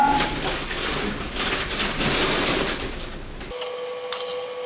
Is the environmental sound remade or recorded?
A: recorded